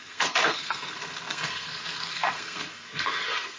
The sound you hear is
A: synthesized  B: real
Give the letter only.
A